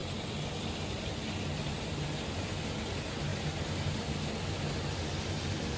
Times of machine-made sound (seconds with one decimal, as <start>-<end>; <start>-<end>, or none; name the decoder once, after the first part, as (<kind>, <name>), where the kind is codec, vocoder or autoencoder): none